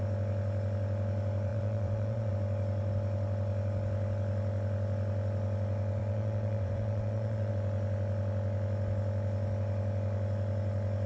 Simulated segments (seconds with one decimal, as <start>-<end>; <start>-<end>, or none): 1.5-2.3; 6.0-7.5